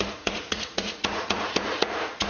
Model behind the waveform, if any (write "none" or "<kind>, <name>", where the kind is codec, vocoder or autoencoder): vocoder, Vocos